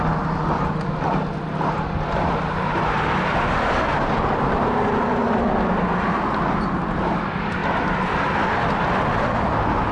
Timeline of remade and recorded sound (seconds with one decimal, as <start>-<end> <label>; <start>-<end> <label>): 0.0-9.9 recorded